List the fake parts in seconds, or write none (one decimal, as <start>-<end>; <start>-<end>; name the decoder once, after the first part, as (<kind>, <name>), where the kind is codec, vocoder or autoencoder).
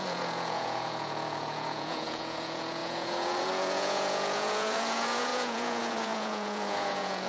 0.0-7.3 (vocoder, Vocos)